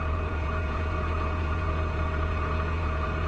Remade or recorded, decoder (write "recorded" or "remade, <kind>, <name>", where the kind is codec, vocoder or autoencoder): remade, vocoder, Vocos